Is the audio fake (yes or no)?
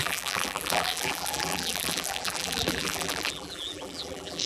yes